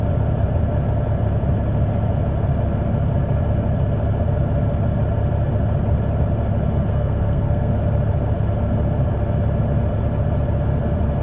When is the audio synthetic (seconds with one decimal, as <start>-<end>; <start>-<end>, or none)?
6.9-7.7